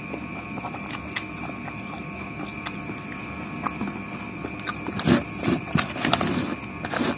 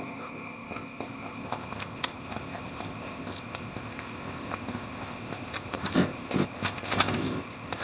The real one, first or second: first